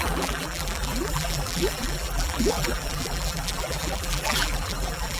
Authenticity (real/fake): fake